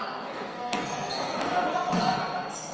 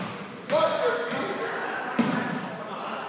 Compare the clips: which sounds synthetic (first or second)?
first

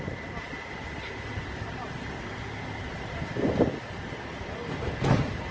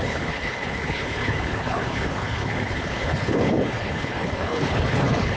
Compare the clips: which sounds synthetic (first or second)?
second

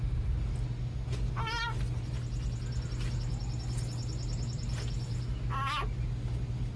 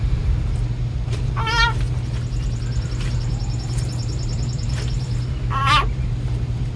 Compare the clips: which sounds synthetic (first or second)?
second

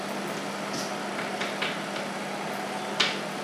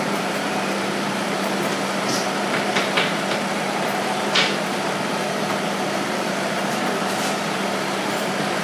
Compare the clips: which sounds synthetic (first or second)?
second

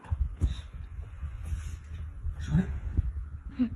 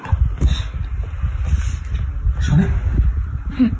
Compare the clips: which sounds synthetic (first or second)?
first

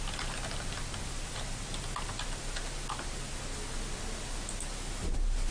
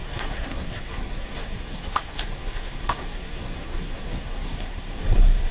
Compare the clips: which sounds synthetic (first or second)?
second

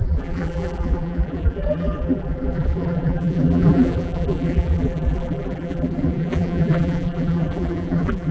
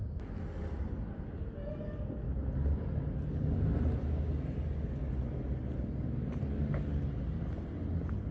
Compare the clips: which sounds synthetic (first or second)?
first